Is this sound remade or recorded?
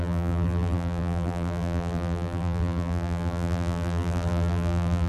remade